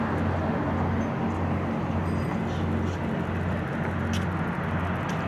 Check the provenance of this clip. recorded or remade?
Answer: recorded